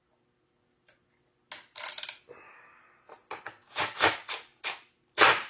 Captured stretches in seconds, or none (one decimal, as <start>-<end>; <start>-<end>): 0.0-5.5